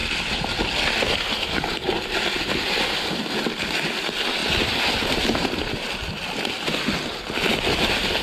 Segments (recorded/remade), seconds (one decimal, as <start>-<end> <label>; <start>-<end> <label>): 0.0-8.2 recorded